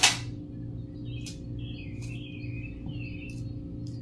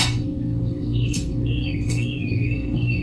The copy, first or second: second